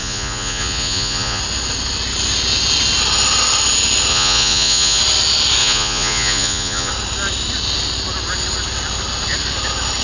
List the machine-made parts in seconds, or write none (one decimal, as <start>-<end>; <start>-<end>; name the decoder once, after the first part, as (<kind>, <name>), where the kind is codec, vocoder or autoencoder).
0.0-1.4 (vocoder, Vocos); 4.1-5.0; 5.6-6.9